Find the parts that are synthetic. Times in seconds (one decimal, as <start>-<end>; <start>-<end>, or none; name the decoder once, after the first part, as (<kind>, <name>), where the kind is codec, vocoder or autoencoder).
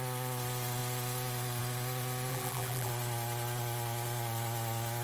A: 2.3-2.9 (vocoder, BigVGAN v2)